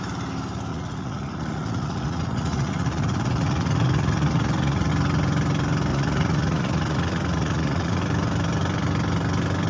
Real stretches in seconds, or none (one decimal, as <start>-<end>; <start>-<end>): 0.0-0.7; 4.9-5.9; 8.0-9.7